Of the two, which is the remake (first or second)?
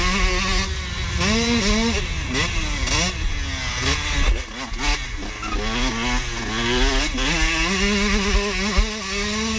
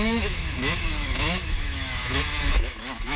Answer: second